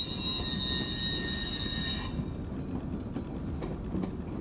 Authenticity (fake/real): real